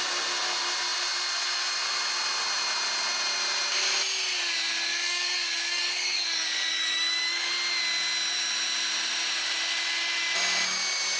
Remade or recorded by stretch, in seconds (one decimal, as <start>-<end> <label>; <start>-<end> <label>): 0.0-4.9 recorded; 4.9-7.5 remade; 7.5-11.2 recorded